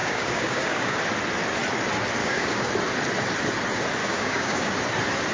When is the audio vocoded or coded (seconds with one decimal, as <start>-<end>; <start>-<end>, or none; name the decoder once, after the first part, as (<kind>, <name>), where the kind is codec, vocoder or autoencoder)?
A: 0.0-1.0 (codec, DAC); 2.2-2.7; 4.0-4.7